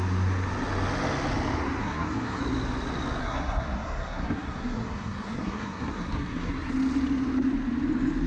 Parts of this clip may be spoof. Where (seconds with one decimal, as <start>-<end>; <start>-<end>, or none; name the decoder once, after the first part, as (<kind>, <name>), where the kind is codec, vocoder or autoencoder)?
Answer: 1.8-2.4 (codec, SNAC); 3.2-6.7